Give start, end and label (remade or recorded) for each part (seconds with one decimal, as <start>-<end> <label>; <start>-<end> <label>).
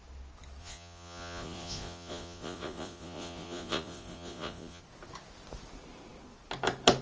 0.0-0.6 recorded; 0.6-4.8 remade; 4.8-7.0 recorded